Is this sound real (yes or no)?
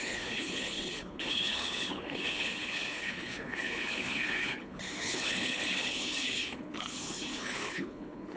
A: no